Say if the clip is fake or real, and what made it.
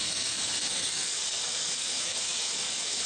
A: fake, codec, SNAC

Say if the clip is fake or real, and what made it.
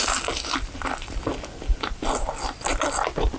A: real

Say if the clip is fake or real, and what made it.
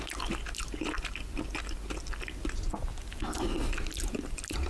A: real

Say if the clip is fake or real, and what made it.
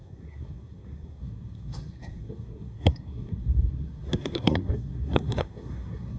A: fake, codec, SNAC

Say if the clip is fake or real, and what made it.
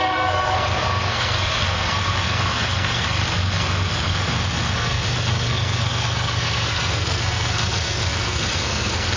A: fake, codec, SNAC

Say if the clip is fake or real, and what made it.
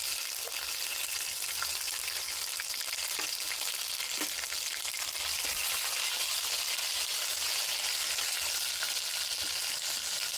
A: real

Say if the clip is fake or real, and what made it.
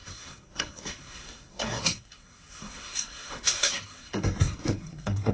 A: fake, codec, SNAC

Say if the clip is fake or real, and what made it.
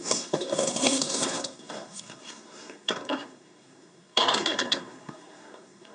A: fake, codec, SNAC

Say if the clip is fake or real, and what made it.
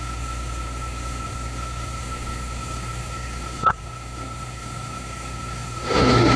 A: fake, codec, SNAC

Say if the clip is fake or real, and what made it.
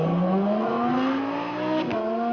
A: fake, codec, SNAC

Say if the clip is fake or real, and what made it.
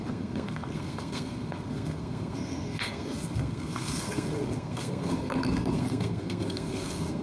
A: fake, codec, SNAC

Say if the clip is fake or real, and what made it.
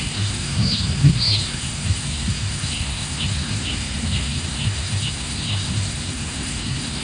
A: fake, codec, SNAC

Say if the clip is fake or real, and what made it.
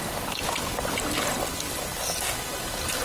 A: real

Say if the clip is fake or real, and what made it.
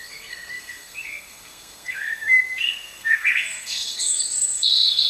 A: fake, codec, SNAC